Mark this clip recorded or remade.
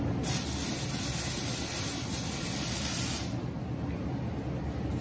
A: recorded